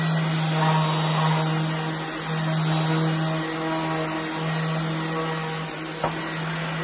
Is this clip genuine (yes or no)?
yes